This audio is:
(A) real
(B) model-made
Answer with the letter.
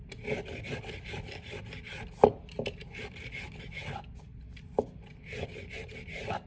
A